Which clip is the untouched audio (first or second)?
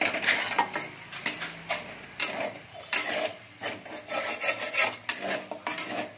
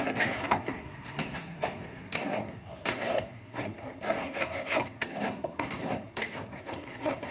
first